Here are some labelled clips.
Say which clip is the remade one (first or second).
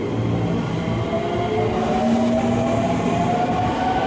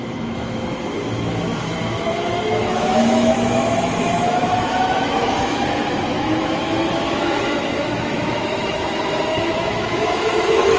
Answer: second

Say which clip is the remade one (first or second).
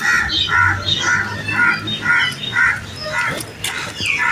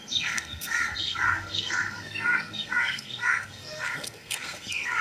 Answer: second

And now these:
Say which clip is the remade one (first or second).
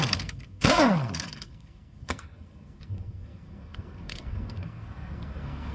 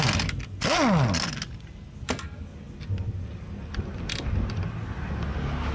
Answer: first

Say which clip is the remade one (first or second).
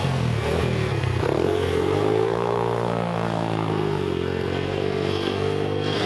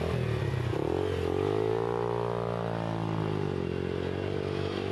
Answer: first